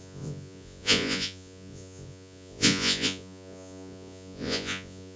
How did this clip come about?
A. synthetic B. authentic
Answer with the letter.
A